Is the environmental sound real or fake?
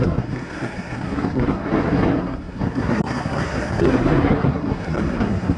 fake